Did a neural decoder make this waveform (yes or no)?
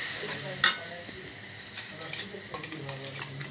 no